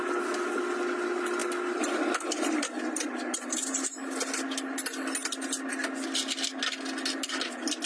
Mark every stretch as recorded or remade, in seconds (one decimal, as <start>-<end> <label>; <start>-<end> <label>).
0.0-7.9 recorded